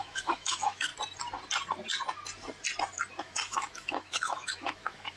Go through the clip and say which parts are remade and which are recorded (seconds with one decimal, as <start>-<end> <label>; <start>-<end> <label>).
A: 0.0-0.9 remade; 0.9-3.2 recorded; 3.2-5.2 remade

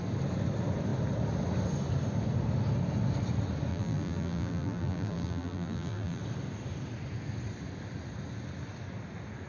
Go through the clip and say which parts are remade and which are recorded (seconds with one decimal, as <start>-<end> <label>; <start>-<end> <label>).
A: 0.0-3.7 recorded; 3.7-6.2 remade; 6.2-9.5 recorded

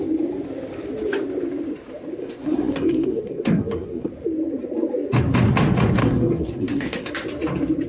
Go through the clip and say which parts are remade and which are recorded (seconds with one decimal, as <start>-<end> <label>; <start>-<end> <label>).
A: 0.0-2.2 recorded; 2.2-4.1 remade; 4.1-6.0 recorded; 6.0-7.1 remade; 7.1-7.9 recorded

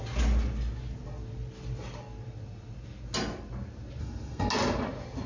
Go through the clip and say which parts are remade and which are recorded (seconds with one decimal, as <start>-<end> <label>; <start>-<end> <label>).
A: 0.0-4.0 recorded; 4.0-4.5 remade; 4.5-5.3 recorded

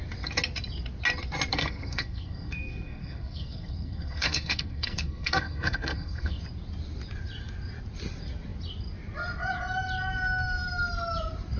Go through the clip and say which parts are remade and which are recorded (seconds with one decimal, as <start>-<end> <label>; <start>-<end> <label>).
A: 0.0-1.5 recorded; 1.5-6.4 remade; 6.4-11.6 recorded

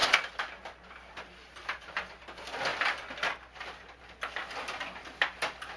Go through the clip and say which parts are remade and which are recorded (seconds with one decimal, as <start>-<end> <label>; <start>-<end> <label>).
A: 0.0-2.0 remade; 2.0-5.8 recorded

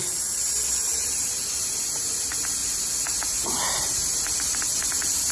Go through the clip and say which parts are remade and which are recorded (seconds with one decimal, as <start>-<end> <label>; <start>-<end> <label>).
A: 0.0-0.9 recorded; 0.9-1.9 remade; 1.9-5.3 recorded